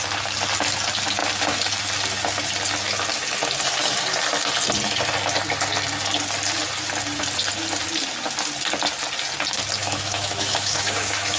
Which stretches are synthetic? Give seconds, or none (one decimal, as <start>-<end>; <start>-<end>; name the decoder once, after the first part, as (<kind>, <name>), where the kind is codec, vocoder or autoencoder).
9.8-11.4 (autoencoder, DAC-VAE)